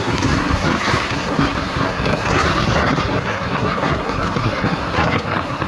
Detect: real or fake fake